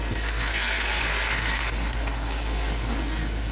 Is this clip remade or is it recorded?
remade